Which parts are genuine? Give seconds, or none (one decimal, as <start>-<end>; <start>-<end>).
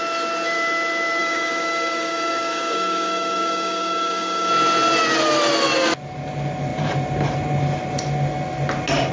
0.0-1.2; 4.5-9.1